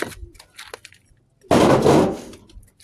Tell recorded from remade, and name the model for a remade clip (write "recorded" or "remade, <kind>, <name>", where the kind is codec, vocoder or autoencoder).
recorded